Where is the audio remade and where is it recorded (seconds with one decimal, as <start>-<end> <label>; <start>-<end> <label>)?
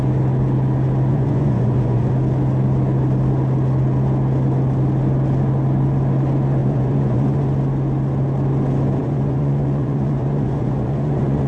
0.0-1.1 recorded; 1.1-2.1 remade; 2.1-6.6 recorded; 6.6-7.5 remade; 7.5-9.0 recorded; 9.0-11.5 remade